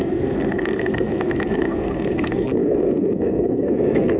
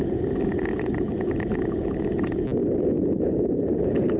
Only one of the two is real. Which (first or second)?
second